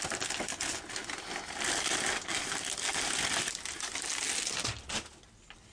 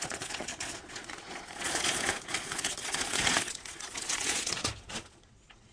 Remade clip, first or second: second